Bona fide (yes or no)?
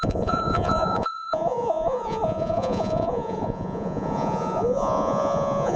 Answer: no